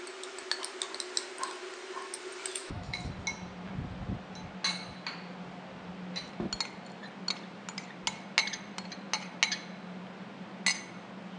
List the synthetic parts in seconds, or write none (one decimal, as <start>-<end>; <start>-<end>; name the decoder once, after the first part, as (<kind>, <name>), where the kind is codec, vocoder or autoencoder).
2.6-3.1 (autoencoder, DAC-VAE)